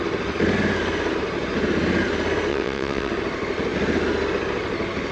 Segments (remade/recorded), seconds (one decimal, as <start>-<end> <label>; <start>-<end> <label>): 0.0-2.5 recorded; 2.5-3.1 remade; 3.1-5.1 recorded